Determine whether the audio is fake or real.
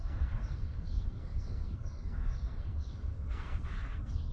fake